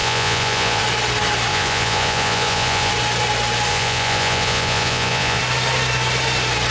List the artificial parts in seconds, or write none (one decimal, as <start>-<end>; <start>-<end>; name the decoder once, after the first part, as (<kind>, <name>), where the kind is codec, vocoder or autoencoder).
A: 0.0-0.8 (vocoder, Vocos); 1.5-2.9; 3.7-5.4